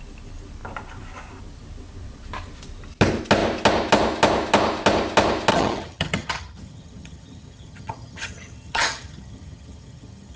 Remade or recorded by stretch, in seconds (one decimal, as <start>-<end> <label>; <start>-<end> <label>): 0.0-5.5 recorded; 5.5-10.4 remade

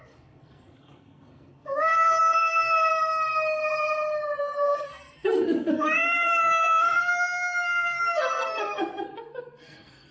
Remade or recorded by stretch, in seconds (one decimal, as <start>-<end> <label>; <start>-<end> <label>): 0.0-2.9 remade; 2.9-4.4 recorded; 4.4-10.1 remade

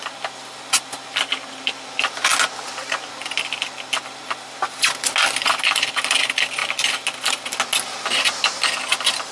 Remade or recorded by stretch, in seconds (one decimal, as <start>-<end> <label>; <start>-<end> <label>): 0.0-9.3 recorded

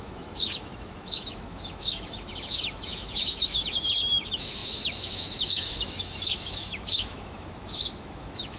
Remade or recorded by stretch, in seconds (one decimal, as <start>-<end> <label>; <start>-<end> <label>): 0.0-8.6 remade